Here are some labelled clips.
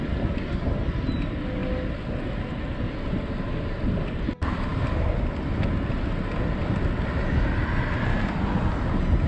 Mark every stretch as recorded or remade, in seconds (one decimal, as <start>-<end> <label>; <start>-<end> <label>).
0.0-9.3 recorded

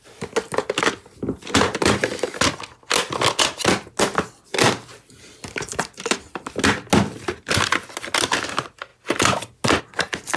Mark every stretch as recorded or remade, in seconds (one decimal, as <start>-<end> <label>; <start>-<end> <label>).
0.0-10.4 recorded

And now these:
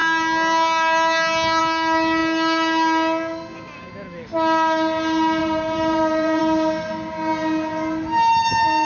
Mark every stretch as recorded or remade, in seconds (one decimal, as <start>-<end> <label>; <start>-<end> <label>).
0.0-5.4 recorded; 5.4-6.4 remade; 6.4-8.8 recorded

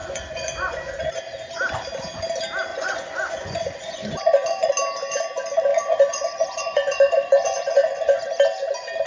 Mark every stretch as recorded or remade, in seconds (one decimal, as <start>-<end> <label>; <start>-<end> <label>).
0.0-1.2 remade; 1.2-2.7 recorded; 2.7-4.7 remade; 4.7-5.7 recorded; 5.7-8.2 remade; 8.2-9.1 recorded